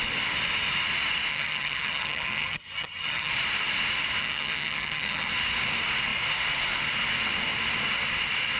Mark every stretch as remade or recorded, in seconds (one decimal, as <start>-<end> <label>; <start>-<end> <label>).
0.0-1.3 recorded; 1.3-3.3 remade; 3.3-4.2 recorded; 4.2-5.3 remade; 5.3-8.6 recorded

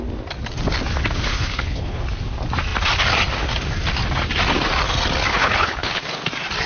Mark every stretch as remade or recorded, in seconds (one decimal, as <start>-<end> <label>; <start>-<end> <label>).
0.0-1.3 recorded; 1.3-2.0 remade; 2.0-5.3 recorded; 5.3-6.0 remade; 6.0-6.7 recorded

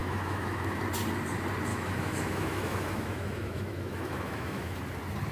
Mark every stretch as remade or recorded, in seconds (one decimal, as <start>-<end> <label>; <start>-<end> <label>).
0.0-0.8 remade; 0.8-1.7 recorded; 1.7-4.8 remade; 4.8-5.3 recorded

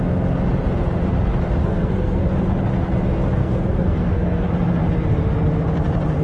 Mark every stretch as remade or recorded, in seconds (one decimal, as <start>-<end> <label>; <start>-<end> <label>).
0.0-1.6 recorded; 1.6-2.2 remade; 2.2-3.4 recorded; 3.4-4.5 remade; 4.5-6.2 recorded

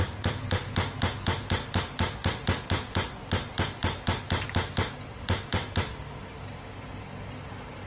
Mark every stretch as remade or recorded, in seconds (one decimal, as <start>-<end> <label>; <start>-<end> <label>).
0.0-7.9 recorded